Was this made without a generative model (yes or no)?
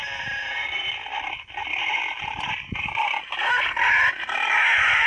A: yes